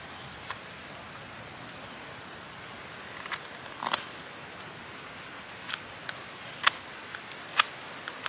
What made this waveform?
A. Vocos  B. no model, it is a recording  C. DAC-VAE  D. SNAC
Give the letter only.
B